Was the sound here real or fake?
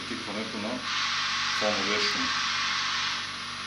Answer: real